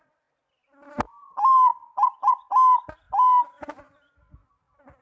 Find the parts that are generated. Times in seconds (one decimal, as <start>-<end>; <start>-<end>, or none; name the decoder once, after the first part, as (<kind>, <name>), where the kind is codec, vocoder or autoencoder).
none